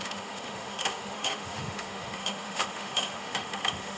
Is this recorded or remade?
remade